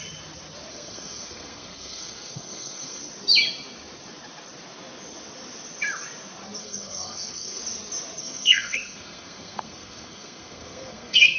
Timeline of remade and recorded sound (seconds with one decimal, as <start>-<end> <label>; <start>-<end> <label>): 0.0-0.7 recorded; 0.7-3.0 remade; 3.0-6.6 recorded; 6.6-7.6 remade; 7.6-8.2 recorded; 8.2-11.4 remade